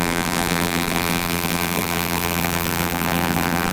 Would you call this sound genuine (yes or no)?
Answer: no